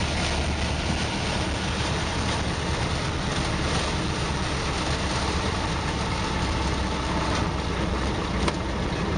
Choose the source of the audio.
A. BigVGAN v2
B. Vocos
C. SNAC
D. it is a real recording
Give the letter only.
D